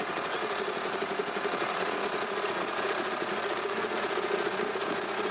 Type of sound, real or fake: fake